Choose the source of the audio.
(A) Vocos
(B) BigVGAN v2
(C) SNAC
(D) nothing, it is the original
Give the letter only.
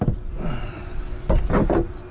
D